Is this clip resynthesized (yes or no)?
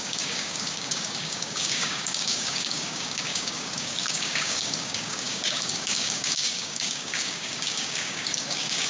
yes